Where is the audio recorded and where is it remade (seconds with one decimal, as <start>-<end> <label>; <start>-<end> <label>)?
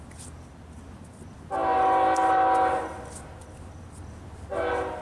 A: 0.0-5.0 recorded